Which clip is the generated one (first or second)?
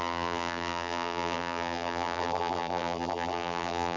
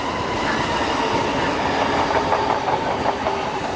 first